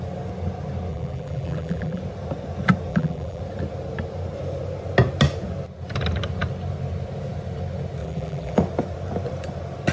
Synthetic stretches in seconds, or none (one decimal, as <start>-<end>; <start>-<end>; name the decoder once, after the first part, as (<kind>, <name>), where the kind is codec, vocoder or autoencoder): 0.9-2.0 (vocoder, BigVGAN v2); 2.9-3.4; 8.0-8.6